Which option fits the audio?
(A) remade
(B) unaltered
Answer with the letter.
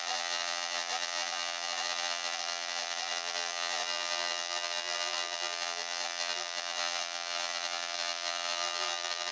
A